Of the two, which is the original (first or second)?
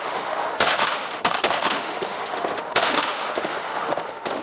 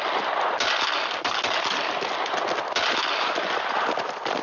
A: second